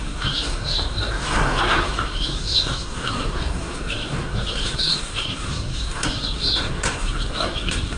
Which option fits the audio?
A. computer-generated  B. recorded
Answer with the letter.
A